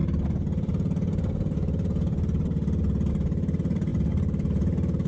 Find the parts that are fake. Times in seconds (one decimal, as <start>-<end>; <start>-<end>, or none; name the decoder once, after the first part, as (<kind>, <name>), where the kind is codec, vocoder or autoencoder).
3.1-5.1 (vocoder, BigVGAN v2)